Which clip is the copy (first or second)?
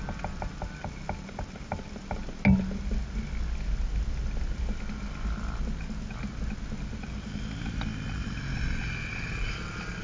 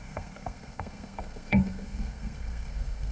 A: second